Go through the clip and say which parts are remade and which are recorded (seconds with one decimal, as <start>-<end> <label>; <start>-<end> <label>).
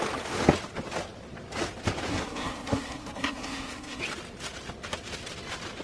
0.0-2.1 recorded; 2.1-4.0 remade; 4.0-5.8 recorded